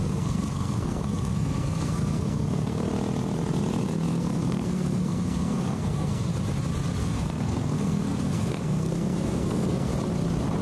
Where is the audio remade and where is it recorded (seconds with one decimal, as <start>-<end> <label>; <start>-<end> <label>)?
0.0-2.9 remade; 2.9-4.1 recorded; 4.1-6.3 remade; 6.3-7.0 recorded; 7.0-9.9 remade; 9.9-10.6 recorded